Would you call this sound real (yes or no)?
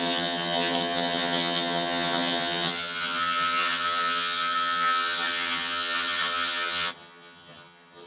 no